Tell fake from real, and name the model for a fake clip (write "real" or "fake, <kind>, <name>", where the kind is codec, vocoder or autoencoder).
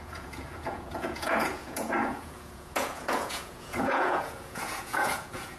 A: fake, vocoder, Vocos